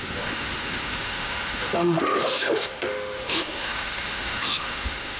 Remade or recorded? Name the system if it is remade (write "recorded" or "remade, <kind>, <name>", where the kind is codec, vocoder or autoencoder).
remade, autoencoder, DAC-VAE